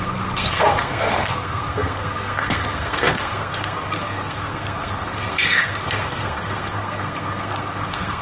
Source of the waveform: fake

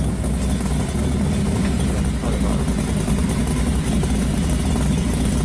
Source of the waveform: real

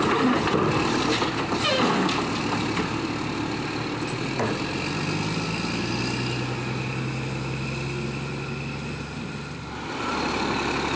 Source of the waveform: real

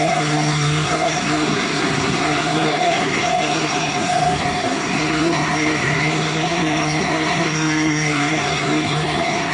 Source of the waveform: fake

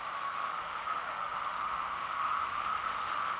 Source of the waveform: fake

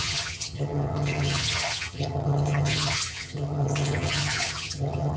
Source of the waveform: fake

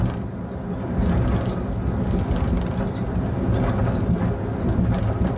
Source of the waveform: real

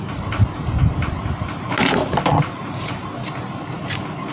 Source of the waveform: real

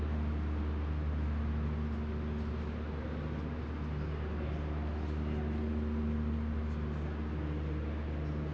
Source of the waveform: real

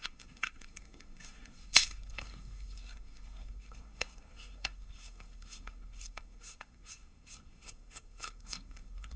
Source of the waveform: fake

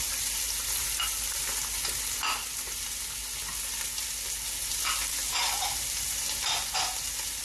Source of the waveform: real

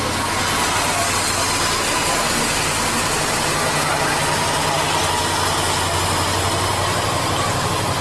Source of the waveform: real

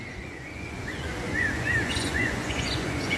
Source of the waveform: fake